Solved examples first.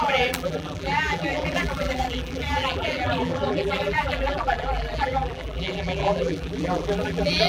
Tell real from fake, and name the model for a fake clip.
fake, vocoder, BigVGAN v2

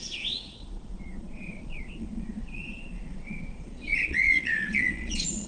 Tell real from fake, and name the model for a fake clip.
fake, vocoder, Vocos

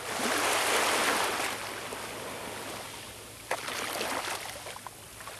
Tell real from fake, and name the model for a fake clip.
real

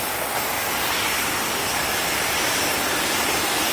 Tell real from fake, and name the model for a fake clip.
real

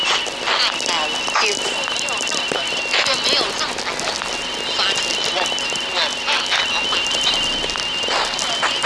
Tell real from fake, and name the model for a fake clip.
real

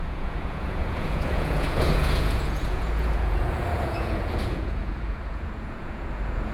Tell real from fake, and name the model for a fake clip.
fake, vocoder, Vocos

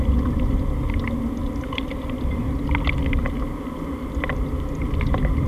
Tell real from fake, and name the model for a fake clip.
real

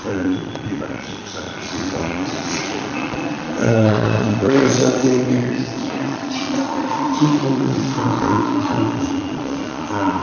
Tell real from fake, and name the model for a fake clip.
fake, vocoder, Vocos